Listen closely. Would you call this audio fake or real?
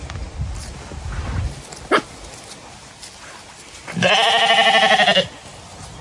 real